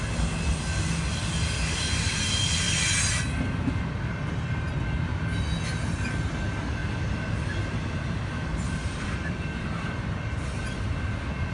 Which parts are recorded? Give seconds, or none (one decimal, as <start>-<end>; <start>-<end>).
0.0-6.8; 9.4-11.5